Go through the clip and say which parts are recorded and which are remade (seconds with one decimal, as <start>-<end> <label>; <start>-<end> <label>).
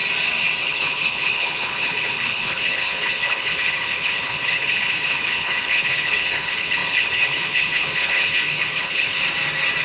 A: 0.0-0.6 recorded; 0.6-9.2 remade; 9.2-9.8 recorded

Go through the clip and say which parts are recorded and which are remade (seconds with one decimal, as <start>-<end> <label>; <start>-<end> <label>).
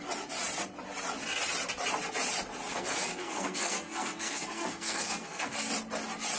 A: 0.0-2.7 recorded; 2.7-5.7 remade; 5.7-6.4 recorded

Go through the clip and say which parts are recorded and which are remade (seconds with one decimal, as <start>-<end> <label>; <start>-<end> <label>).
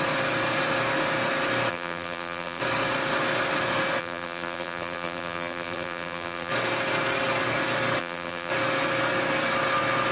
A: 0.0-1.7 recorded; 1.7-2.6 remade; 2.6-4.0 recorded; 4.0-6.5 remade; 6.5-8.0 recorded; 8.0-8.5 remade; 8.5-10.1 recorded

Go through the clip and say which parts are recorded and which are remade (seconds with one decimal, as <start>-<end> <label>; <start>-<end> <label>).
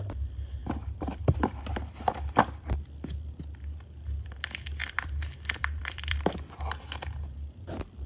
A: 0.0-0.6 recorded; 0.6-2.1 remade; 2.1-4.8 recorded; 4.8-6.6 remade; 6.6-8.1 recorded